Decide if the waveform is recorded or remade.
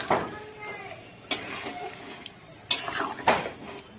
recorded